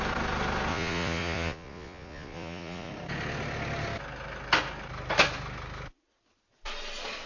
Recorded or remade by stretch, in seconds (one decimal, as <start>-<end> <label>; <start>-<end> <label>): 0.0-0.7 recorded; 0.7-2.9 remade; 2.9-7.3 recorded